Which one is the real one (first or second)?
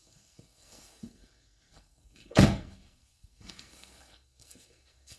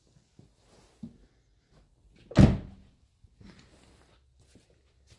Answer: second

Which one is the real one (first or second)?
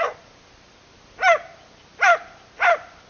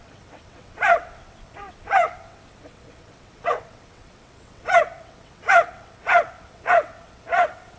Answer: first